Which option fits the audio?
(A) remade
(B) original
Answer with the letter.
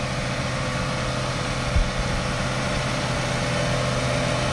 B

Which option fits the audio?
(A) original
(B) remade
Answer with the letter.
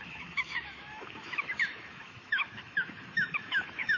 B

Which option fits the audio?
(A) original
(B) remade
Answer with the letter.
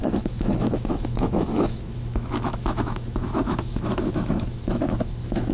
B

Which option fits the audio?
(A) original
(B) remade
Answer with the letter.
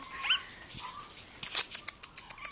A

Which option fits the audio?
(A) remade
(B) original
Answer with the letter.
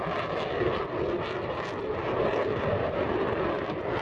B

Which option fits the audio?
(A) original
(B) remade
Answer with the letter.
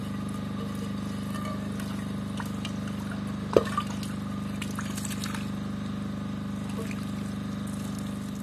A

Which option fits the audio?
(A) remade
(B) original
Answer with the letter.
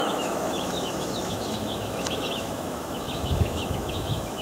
A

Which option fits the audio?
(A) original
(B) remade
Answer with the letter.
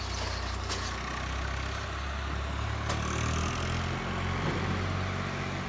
A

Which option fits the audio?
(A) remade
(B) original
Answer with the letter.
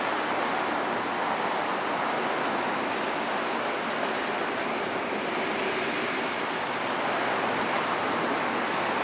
B